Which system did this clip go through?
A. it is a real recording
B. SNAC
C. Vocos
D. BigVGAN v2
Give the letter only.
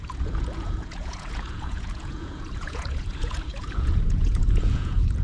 C